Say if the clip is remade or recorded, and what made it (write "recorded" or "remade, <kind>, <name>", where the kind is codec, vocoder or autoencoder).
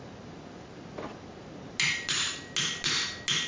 recorded